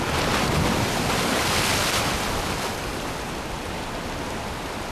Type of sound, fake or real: real